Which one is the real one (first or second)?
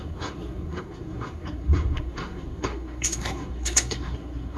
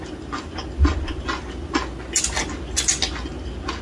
second